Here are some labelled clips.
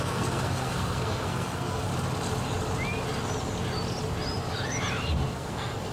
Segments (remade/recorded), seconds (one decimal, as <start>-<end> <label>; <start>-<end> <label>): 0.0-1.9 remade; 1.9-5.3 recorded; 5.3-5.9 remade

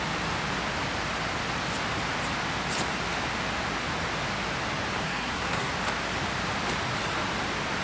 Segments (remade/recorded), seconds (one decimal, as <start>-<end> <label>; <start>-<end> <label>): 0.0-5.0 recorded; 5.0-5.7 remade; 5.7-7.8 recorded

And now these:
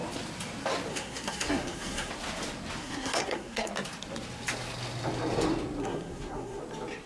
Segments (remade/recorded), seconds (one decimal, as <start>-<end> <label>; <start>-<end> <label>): 0.0-0.9 recorded; 0.9-2.1 remade; 2.1-2.8 recorded; 2.8-3.7 remade; 3.7-5.8 recorded; 5.8-6.6 remade; 6.6-7.1 recorded